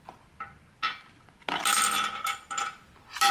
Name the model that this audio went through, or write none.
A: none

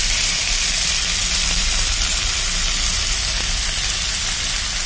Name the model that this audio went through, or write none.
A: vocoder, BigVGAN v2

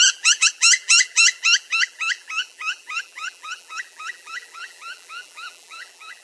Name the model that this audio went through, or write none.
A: vocoder, BigVGAN v2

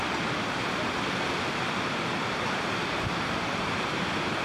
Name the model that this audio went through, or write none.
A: vocoder, BigVGAN v2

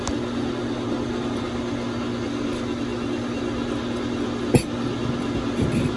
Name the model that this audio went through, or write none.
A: none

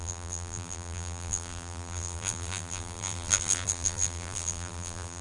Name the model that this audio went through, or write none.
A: vocoder, BigVGAN v2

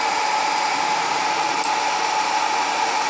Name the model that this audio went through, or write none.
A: none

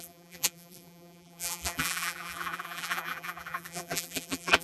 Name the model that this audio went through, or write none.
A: vocoder, BigVGAN v2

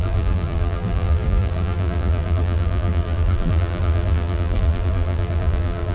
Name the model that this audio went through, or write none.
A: vocoder, BigVGAN v2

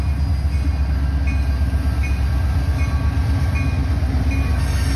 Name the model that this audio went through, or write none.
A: none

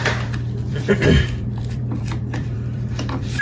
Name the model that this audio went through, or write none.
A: vocoder, BigVGAN v2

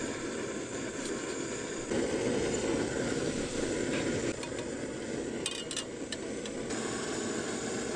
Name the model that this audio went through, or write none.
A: none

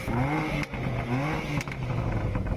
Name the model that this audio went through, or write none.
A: none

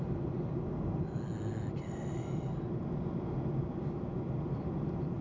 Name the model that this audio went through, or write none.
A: none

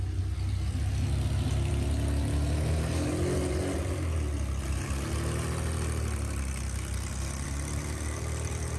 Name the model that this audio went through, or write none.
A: none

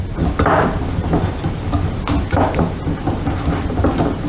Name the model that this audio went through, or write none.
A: none